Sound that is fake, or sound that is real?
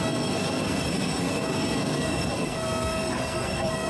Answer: fake